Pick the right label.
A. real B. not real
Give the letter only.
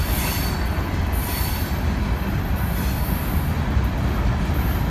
A